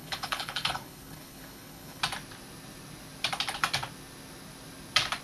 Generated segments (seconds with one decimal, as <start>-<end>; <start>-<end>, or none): 0.0-2.0

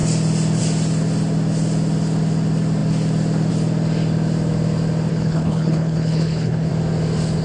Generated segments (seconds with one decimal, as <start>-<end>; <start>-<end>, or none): 5.1-6.7

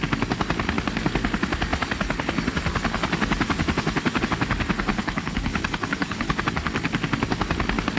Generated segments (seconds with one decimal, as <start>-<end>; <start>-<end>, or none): 4.9-6.4

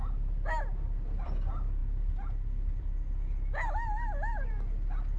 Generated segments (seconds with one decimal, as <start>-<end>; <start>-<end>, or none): none

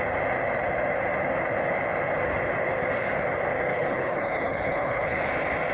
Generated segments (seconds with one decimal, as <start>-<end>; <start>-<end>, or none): 3.7-5.2

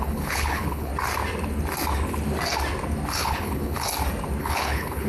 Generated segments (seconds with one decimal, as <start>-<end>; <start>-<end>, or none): 0.0-0.9; 3.1-3.9; 4.4-5.1

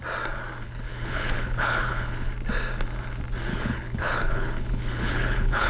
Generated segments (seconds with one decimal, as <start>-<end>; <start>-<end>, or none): 0.6-2.3; 3.5-5.7

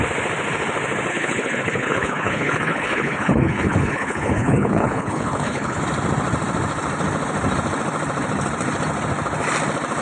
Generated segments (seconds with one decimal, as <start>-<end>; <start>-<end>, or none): 1.1-5.8